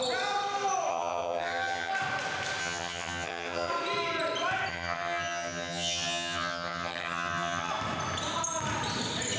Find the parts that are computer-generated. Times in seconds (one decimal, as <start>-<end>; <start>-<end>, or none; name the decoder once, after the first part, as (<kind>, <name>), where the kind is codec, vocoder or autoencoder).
0.9-1.9 (vocoder, HiFi-GAN); 2.6-3.7; 4.7-7.7